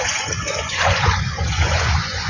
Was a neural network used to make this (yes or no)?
yes